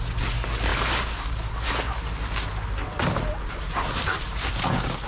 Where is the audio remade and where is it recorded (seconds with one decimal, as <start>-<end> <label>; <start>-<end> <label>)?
0.0-4.4 recorded; 4.4-5.1 remade